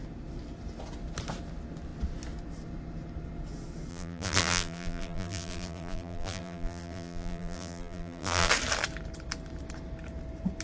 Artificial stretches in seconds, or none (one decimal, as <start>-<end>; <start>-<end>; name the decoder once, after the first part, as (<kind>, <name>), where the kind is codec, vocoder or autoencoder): 3.9-8.5 (vocoder, BigVGAN v2)